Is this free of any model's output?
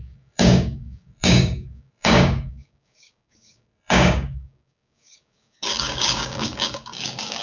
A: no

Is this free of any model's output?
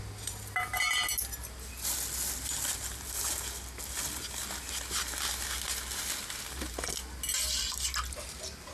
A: yes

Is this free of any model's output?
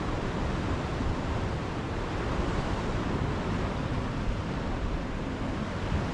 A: yes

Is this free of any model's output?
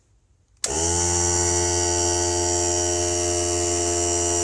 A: yes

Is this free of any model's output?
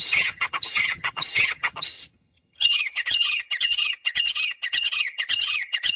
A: no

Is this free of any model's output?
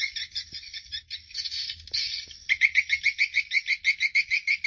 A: yes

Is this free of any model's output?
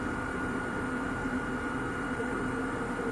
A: no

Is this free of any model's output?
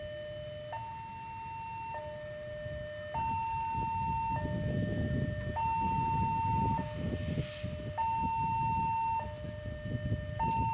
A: yes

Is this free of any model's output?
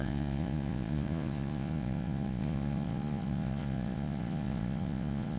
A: no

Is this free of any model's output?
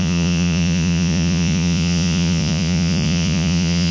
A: no